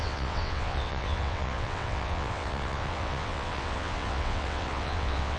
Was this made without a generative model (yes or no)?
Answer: no